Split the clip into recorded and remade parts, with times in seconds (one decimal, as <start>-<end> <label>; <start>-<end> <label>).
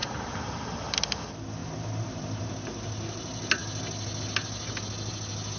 0.0-0.7 remade; 0.7-1.6 recorded; 1.6-2.5 remade; 2.5-5.6 recorded